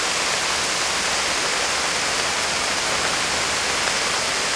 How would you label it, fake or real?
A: real